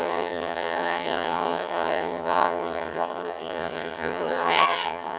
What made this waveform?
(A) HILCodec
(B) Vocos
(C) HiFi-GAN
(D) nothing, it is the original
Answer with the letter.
C